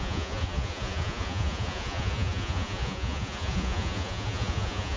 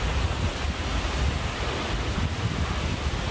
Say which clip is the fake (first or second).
first